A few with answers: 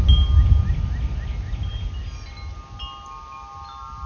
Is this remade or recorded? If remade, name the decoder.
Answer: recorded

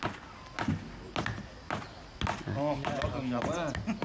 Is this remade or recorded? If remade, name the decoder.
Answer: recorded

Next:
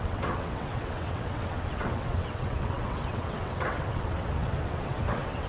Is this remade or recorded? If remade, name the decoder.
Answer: remade, vocoder, WaveNeXt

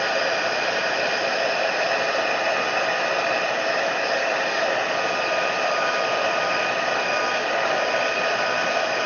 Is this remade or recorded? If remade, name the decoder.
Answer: recorded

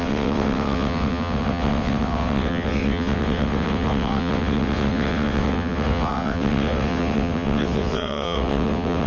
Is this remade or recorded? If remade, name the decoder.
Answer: remade, vocoder, WaveNeXt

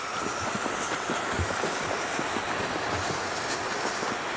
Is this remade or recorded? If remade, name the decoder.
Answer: recorded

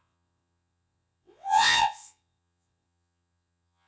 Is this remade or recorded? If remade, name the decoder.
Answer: remade, vocoder, WaveNeXt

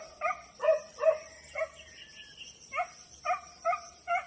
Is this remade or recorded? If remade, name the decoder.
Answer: recorded